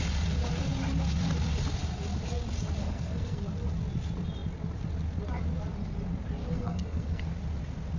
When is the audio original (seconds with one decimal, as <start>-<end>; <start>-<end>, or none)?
0.0-2.8; 3.4-6.4; 7.2-8.0